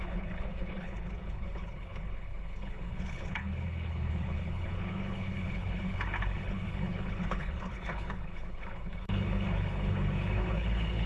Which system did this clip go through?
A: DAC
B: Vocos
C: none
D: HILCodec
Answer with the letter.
D